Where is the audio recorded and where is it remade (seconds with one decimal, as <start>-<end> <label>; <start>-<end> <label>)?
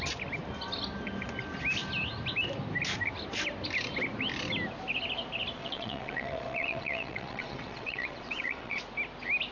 0.0-5.6 recorded; 5.6-8.8 remade; 8.8-9.5 recorded